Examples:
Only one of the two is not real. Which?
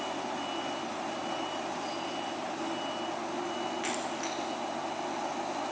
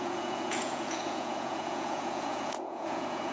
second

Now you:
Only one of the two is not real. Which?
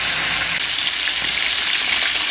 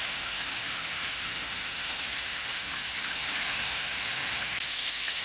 second